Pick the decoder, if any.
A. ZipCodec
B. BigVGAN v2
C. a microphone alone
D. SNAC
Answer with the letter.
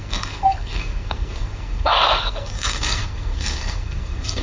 D